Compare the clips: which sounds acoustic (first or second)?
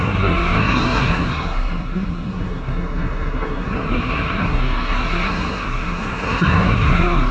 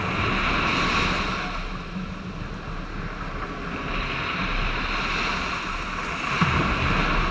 second